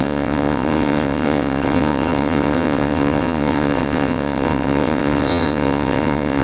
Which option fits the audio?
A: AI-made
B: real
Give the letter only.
A